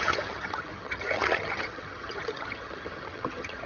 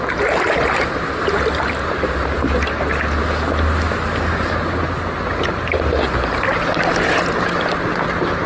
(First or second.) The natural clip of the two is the second